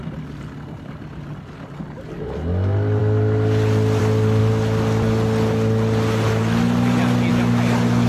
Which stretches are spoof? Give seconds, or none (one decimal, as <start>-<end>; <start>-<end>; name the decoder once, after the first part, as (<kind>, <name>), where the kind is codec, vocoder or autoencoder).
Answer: none